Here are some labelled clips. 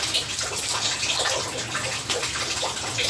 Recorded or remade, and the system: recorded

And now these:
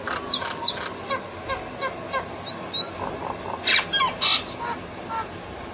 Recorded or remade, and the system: recorded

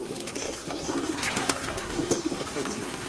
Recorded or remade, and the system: remade, codec, SNAC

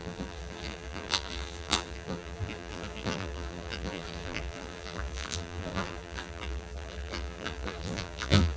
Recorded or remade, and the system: remade, vocoder, BigVGAN v2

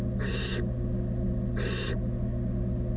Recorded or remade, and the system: recorded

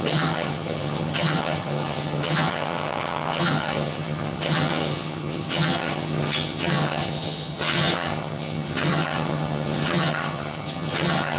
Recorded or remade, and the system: remade, vocoder, HiFi-GAN